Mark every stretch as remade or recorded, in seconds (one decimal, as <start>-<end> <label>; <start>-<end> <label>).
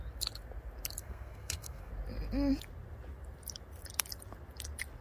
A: 0.0-1.0 recorded; 1.0-1.9 remade; 1.9-5.0 recorded